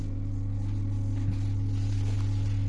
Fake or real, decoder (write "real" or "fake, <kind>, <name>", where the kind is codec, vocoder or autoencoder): real